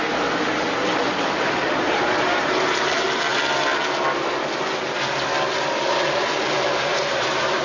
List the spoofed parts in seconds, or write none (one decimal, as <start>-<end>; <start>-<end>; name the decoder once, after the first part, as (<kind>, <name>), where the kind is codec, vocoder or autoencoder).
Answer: 0.8-2.9 (vocoder, BigVGAN v2); 6.9-7.6